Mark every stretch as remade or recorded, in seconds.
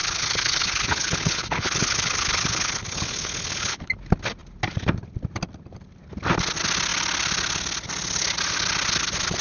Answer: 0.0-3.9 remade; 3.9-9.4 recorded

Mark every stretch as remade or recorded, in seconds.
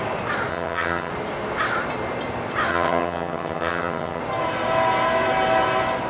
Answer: 0.0-0.5 recorded; 0.5-1.1 remade; 1.1-2.7 recorded; 2.7-4.2 remade; 4.2-6.1 recorded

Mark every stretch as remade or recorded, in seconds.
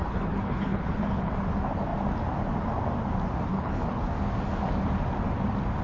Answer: 0.0-1.3 remade; 1.3-3.5 recorded; 3.5-4.1 remade; 4.1-5.8 recorded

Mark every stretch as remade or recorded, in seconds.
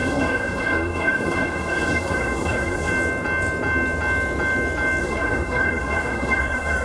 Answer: 0.0-2.9 remade; 2.9-5.0 recorded; 5.0-6.8 remade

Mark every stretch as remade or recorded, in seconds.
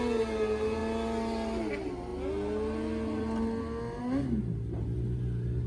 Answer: 0.0-5.7 recorded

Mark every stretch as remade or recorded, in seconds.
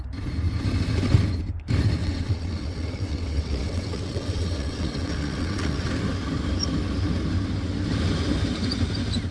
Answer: 0.0-2.0 recorded; 2.0-5.9 remade; 5.9-9.3 recorded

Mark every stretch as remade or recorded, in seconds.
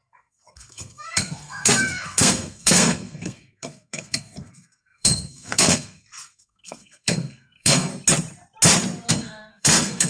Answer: 0.0-7.9 remade; 7.9-9.1 recorded; 9.1-10.1 remade